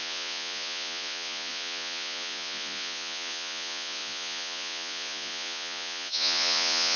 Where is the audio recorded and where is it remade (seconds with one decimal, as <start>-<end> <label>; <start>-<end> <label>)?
0.0-7.0 remade